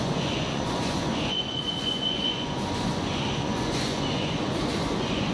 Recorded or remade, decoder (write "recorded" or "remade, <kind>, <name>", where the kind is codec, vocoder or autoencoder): remade, vocoder, Vocos